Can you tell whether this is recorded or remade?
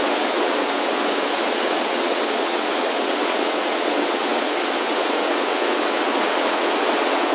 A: remade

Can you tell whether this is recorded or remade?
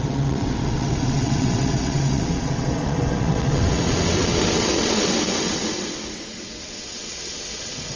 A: remade